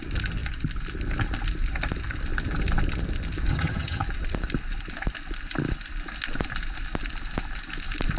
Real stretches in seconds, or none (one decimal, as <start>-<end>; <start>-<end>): 0.0-3.5; 4.0-8.2